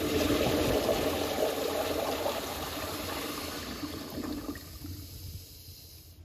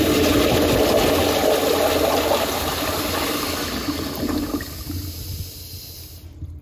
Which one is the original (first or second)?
second